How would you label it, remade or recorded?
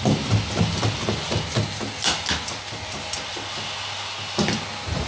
recorded